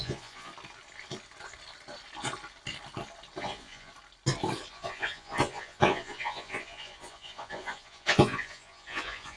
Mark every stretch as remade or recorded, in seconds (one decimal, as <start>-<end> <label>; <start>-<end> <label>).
0.0-0.5 remade; 0.5-3.4 recorded; 3.4-3.9 remade; 3.9-4.7 recorded; 4.7-9.4 remade